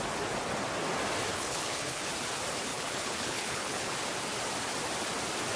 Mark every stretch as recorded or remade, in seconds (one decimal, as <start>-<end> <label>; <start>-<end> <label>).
0.0-1.3 recorded; 1.3-2.1 remade; 2.1-2.7 recorded; 2.7-3.9 remade; 3.9-5.6 recorded

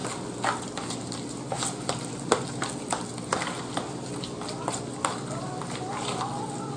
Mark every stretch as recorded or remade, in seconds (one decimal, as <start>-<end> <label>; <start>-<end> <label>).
0.0-6.8 recorded